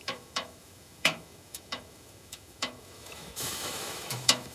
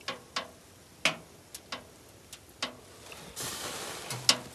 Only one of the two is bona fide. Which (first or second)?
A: second